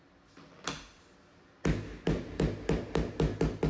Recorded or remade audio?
recorded